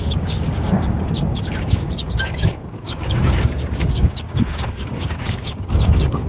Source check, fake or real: fake